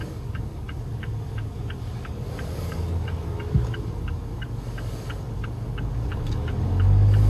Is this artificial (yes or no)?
yes